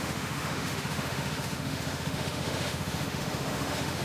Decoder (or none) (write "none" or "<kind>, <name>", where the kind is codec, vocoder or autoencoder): autoencoder, DAC-VAE